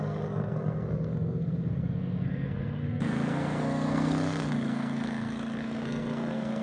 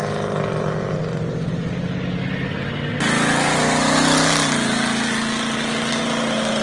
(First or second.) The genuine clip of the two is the second